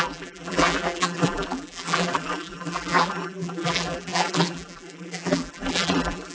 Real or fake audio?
fake